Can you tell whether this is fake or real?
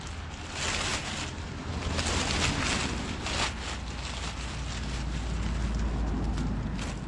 real